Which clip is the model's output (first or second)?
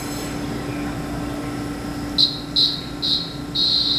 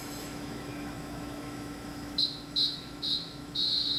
second